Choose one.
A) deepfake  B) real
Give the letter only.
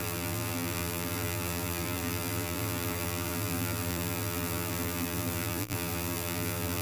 A